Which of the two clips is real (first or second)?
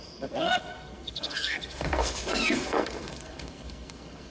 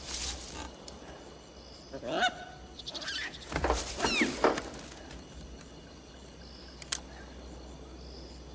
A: second